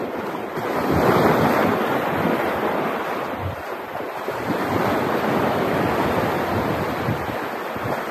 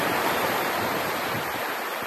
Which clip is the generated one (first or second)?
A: second